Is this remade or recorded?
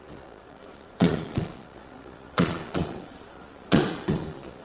remade